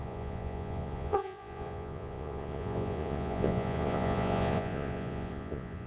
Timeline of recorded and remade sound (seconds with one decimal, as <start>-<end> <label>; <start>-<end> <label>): 0.0-5.9 remade